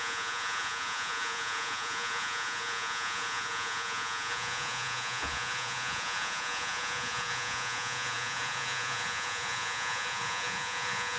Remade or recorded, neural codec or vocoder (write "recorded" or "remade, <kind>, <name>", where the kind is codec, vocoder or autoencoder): remade, vocoder, Vocos